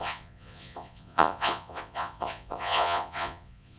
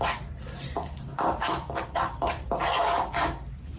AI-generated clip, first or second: first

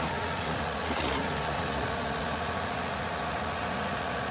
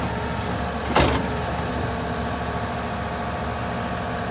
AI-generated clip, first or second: first